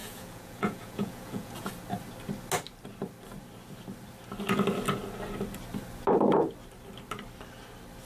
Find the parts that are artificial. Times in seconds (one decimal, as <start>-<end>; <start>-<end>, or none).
0.0-1.7